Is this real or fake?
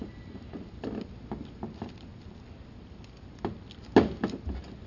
real